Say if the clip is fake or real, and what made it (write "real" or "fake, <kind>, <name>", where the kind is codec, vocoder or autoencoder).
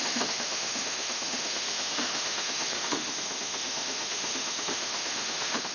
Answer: fake, autoencoder, DAC-VAE